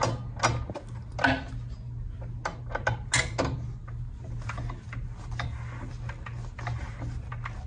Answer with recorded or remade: recorded